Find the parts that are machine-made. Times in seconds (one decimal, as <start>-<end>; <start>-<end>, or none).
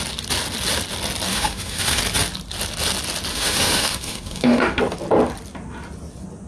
1.3-2.0; 3.3-4.8